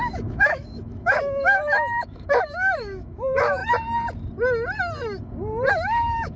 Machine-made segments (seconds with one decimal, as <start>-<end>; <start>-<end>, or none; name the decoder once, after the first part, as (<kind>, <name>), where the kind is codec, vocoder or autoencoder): 0.0-3.6 (autoencoder, DAC-VAE); 5.7-6.4